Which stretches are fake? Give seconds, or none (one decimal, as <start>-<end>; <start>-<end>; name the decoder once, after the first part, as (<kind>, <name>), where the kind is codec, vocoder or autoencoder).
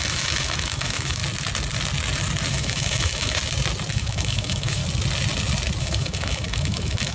0.0-1.2 (autoencoder, DAC-VAE); 2.5-3.4; 3.9-4.8; 5.8-7.1